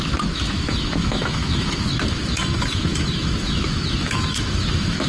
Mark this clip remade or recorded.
remade